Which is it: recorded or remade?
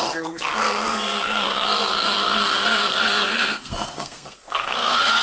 remade